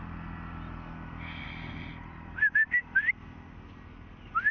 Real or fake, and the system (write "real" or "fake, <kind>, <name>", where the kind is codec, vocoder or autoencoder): real